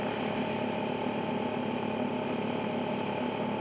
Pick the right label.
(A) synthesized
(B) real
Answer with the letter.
B